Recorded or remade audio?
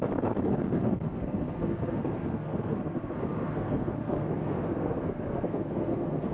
remade